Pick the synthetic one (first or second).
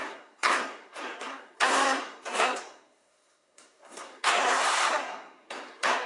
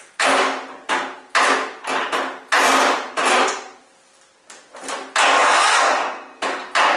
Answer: first